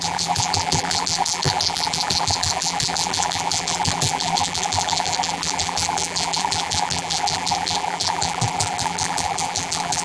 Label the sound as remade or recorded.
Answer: remade